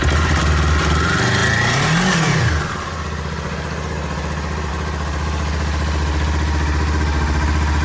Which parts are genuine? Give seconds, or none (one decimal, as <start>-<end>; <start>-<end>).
0.0-7.8